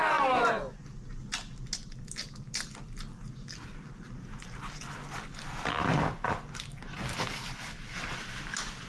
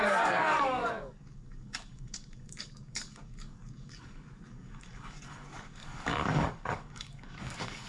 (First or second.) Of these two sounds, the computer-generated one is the second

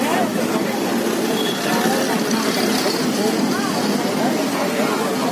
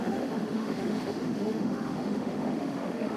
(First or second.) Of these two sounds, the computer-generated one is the second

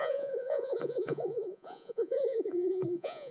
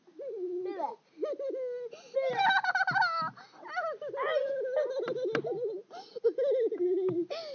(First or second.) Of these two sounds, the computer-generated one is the first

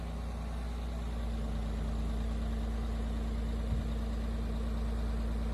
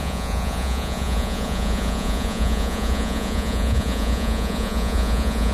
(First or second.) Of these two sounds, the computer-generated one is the second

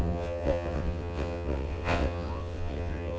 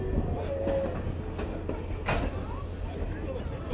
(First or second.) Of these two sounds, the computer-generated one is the first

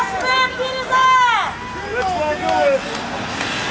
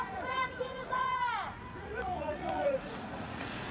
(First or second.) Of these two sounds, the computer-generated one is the second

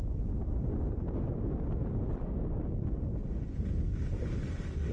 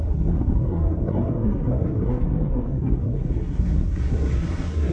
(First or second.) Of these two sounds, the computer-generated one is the second